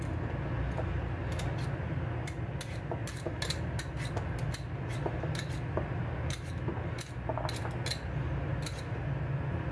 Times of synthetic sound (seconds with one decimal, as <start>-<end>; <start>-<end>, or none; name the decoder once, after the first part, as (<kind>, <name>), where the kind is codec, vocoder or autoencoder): none

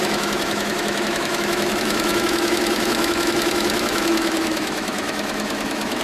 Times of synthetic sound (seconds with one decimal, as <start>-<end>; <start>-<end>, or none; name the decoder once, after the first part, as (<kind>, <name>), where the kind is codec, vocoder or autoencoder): 0.0-6.0 (autoencoder, DAC-VAE)

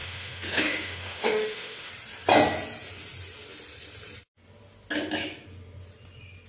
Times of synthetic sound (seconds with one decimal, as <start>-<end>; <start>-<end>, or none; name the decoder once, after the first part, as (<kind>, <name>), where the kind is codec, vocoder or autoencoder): 0.0-1.9 (autoencoder, DAC-VAE)

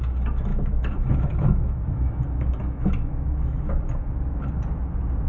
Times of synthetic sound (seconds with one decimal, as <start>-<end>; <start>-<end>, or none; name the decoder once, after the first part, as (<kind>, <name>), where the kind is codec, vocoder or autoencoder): 0.5-3.7 (autoencoder, DAC-VAE)

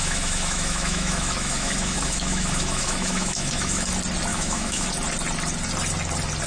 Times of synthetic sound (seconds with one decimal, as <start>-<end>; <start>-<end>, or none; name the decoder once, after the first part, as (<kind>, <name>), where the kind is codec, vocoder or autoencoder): 0.0-3.9 (autoencoder, DAC-VAE); 4.3-4.9

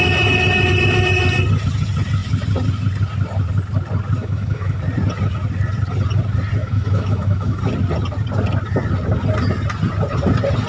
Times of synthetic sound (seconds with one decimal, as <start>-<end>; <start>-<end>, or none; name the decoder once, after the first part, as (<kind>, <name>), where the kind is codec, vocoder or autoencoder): 4.2-4.8 (autoencoder, DAC-VAE); 6.6-7.6

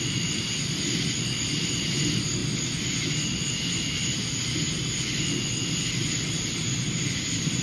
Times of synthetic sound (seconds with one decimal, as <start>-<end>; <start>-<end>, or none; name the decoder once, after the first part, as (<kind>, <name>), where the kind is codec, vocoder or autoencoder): none

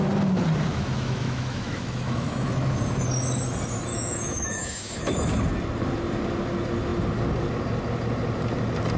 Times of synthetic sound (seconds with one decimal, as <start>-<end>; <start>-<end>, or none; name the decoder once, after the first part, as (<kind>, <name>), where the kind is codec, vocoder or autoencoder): 0.7-2.7 (autoencoder, DAC-VAE); 3.9-5.4